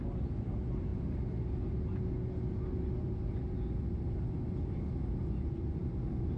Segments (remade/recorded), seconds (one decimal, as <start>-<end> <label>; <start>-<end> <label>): 0.0-6.4 recorded